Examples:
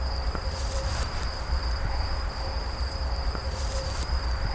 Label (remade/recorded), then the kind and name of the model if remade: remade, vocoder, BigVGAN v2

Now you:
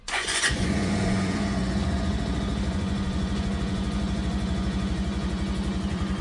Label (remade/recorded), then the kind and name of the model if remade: remade, vocoder, Vocos